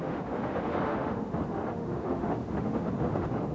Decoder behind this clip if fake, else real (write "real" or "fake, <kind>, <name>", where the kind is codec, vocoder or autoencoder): fake, autoencoder, DAC-VAE